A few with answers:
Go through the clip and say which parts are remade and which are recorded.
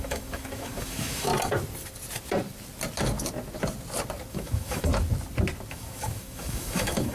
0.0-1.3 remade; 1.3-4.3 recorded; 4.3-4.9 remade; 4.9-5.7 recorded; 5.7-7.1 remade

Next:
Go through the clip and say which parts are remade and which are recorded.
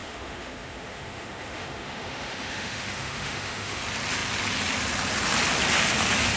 0.0-3.8 remade; 3.8-6.4 recorded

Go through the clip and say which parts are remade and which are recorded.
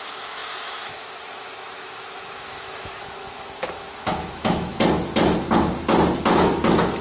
0.0-4.7 remade; 4.7-6.2 recorded; 6.2-7.0 remade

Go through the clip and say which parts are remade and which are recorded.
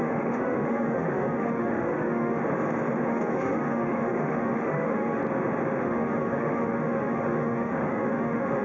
0.0-2.4 remade; 2.4-3.1 recorded; 3.1-5.2 remade; 5.2-5.8 recorded; 5.8-8.6 remade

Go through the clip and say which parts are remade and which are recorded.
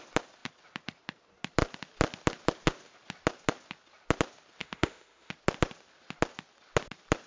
0.0-4.6 recorded; 4.6-5.3 remade; 5.3-7.3 recorded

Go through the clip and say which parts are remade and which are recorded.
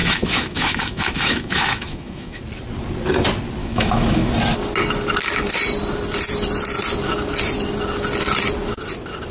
0.0-2.4 remade; 2.4-3.6 recorded; 3.6-4.3 remade; 4.3-9.3 recorded